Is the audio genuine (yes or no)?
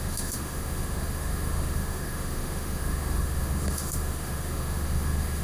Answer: no